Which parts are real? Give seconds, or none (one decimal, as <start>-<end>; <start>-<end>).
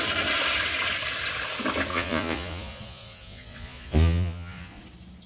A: 0.0-1.9; 4.8-5.3